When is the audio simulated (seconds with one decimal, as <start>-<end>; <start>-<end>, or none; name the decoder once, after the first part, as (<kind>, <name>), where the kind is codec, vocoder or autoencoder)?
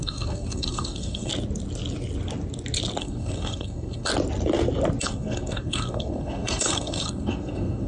0.0-1.3 (codec, SNAC); 3.0-4.1; 5.0-7.9